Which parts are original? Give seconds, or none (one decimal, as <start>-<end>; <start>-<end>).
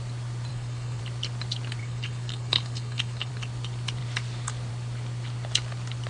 0.0-0.5; 1.0-1.8; 3.3-6.1